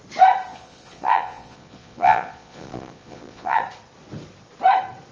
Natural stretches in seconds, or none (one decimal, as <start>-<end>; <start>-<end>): 0.0-0.5; 3.6-5.1